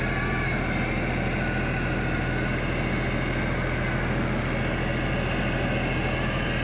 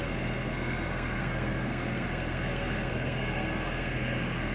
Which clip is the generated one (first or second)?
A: second